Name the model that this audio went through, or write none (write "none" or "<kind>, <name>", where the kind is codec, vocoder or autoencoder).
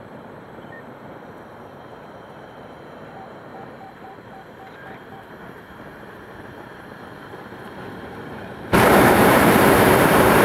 vocoder, BigVGAN v2